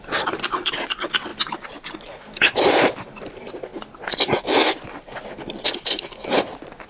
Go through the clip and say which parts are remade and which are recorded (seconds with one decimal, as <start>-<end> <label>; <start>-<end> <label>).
0.0-6.9 recorded